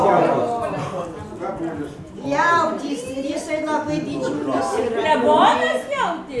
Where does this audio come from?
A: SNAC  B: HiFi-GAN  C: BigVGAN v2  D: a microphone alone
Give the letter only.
D